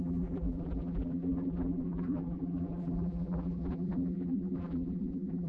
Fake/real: fake